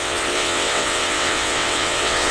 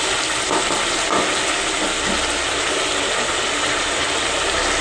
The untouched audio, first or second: second